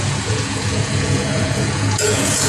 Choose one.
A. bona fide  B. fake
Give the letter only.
B